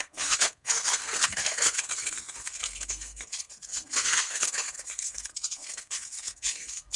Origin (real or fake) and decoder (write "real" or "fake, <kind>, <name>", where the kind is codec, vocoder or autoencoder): fake, codec, SNAC